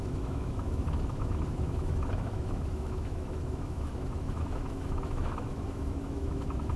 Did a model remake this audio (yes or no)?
yes